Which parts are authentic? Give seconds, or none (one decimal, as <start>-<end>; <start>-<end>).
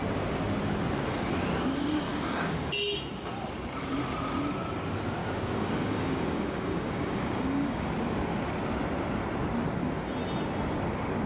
0.0-2.1; 2.7-5.2; 7.9-11.3